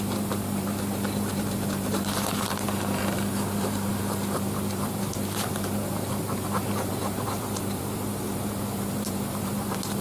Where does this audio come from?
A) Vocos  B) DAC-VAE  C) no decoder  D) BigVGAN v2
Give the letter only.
D